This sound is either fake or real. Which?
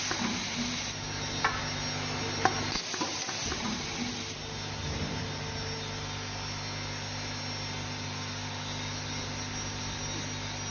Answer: real